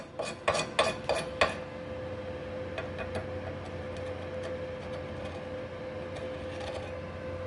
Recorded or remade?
recorded